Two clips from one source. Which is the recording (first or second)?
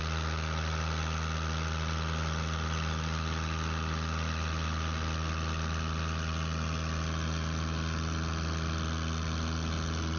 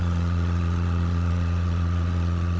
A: first